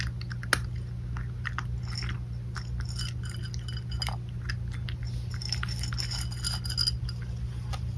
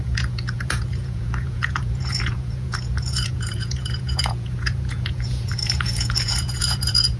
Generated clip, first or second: second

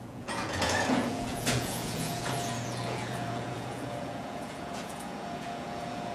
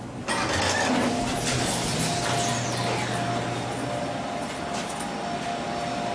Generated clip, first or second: first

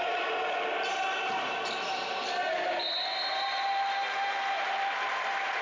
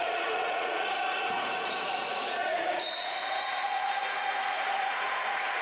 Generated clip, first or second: second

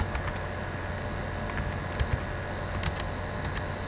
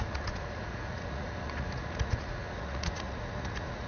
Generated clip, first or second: second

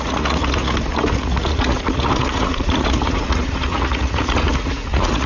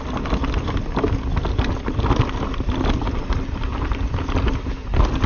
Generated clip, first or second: first